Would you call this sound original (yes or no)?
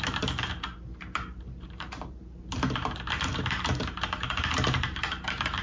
no